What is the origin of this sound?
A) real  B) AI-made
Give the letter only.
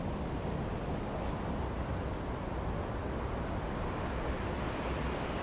A